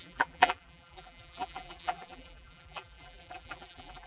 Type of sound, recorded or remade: remade